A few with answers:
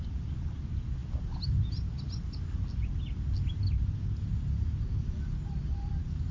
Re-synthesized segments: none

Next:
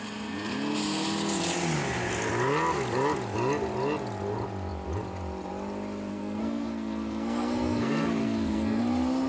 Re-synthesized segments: 6.1-8.8 (codec, SNAC)

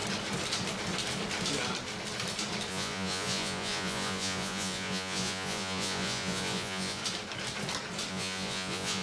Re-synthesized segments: 2.7-7.0 (vocoder, Vocos); 8.1-9.0

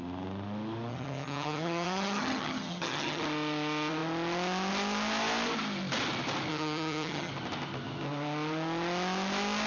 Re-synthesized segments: 0.9-3.2 (vocoder, HiFi-GAN); 6.5-7.3

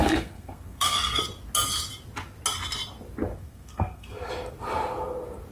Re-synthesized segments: 0.0-1.2 (codec, SNAC); 3.3-4.3

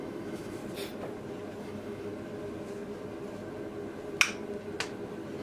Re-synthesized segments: 0.0-0.6 (autoencoder, DAC-VAE); 1.6-2.1

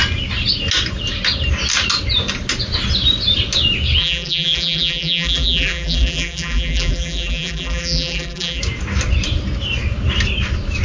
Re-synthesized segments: 4.0-8.6 (vocoder, BigVGAN v2)